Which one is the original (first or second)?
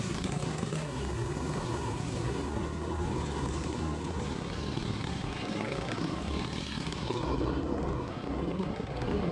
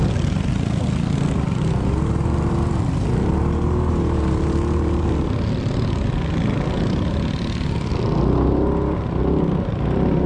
second